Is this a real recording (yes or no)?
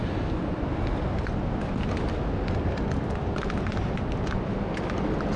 yes